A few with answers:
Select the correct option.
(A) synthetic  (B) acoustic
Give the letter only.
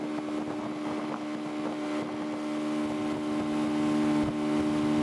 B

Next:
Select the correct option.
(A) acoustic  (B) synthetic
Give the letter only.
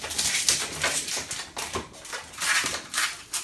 A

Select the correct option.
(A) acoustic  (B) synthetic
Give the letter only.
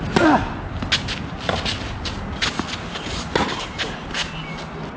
A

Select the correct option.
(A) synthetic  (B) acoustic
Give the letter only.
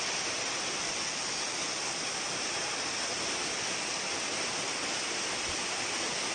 B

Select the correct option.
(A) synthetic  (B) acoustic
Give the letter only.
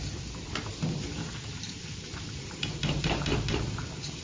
A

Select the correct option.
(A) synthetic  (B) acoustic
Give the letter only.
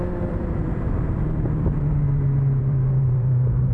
A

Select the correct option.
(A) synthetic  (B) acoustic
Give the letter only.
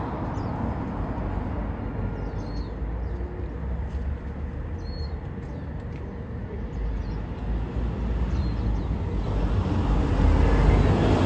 B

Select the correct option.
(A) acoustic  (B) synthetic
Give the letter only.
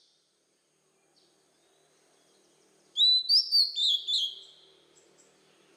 A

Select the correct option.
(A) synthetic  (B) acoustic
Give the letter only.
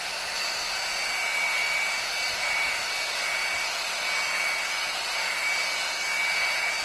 B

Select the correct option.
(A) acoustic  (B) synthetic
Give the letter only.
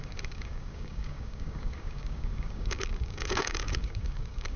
B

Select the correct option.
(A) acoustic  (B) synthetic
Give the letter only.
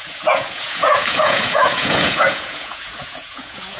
B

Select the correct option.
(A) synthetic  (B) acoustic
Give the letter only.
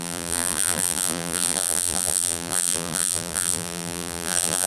A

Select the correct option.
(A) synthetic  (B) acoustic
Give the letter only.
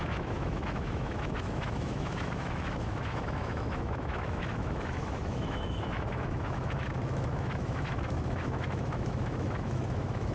A